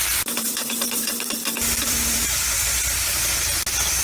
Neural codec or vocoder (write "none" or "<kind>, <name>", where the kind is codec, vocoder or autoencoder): vocoder, BigVGAN v2